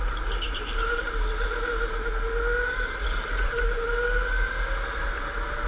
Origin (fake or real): real